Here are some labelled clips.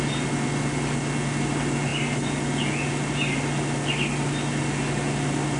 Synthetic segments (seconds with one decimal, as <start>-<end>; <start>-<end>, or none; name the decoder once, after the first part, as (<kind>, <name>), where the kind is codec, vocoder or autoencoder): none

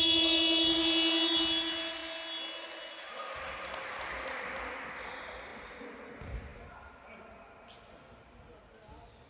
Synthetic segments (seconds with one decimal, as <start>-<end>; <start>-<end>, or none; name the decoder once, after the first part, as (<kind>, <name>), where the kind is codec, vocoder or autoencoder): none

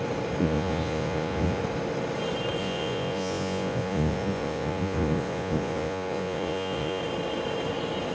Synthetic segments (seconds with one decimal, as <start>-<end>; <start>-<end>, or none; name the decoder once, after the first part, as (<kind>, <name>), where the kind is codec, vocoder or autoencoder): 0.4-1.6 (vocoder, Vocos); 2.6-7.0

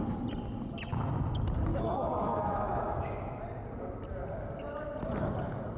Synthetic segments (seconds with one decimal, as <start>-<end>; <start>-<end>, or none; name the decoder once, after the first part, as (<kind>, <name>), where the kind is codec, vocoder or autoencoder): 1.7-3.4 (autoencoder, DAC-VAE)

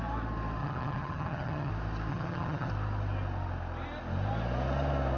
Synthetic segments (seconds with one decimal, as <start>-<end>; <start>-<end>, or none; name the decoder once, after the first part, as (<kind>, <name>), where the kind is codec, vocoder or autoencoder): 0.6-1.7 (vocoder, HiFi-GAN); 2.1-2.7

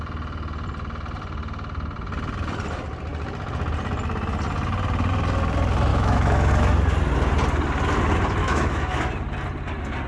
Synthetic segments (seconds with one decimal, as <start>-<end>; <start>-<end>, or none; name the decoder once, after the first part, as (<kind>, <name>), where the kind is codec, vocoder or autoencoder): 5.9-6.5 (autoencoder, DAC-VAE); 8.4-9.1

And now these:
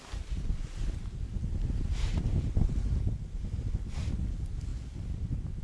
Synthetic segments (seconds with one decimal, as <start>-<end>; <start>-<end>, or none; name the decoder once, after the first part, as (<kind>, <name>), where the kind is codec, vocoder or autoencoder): none

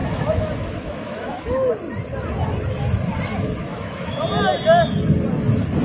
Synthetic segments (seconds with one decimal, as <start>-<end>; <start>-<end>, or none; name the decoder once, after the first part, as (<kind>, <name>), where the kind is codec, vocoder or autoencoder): 0.0-1.7 (autoencoder, DAC-VAE); 3.6-4.2